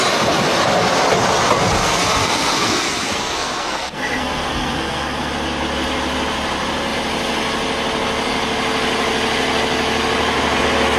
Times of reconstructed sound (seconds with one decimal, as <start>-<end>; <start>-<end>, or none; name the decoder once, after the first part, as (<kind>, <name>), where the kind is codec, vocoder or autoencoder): 1.8-5.3 (codec, SNAC)

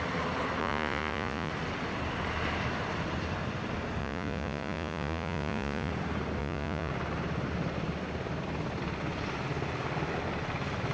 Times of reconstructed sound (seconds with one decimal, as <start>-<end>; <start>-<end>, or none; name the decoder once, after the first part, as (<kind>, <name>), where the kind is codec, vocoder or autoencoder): 0.6-1.5 (vocoder, Vocos); 4.0-5.9; 6.4-6.9

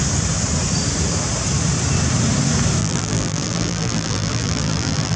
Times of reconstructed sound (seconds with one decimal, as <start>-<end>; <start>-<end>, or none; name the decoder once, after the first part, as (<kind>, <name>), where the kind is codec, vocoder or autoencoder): 2.8-5.2 (vocoder, BigVGAN v2)

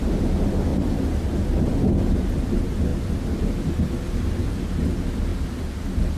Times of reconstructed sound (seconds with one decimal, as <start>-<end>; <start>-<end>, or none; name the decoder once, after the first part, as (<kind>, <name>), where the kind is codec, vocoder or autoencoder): 0.7-1.6 (vocoder, BigVGAN v2)